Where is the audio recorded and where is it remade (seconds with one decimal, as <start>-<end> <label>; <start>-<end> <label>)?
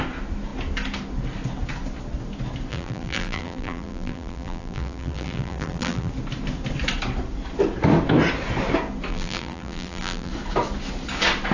0.0-2.7 recorded; 2.7-6.1 remade; 6.1-9.1 recorded; 9.1-10.3 remade; 10.3-11.5 recorded